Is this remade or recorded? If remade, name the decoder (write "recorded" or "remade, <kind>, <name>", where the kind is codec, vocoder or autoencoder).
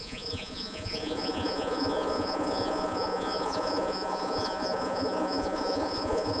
remade, vocoder, Vocos